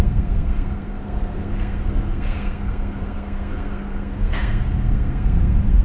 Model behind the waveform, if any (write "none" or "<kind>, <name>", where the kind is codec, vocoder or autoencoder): codec, SNAC